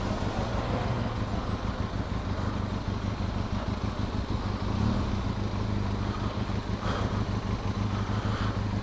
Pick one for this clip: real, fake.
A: real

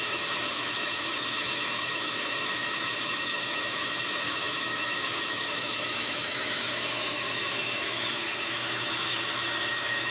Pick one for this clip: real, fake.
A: fake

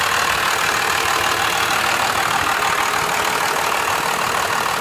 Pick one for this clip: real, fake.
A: real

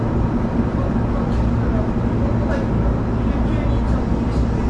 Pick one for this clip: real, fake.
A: real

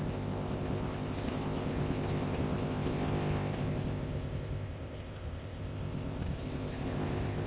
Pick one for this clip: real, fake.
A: fake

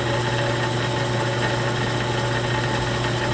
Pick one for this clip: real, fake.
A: real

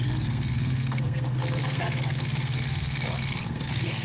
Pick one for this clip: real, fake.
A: fake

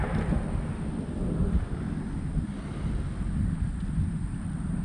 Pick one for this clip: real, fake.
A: real